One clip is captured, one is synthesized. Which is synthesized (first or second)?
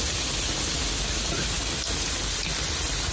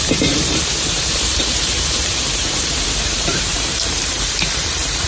second